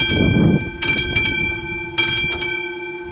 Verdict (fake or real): real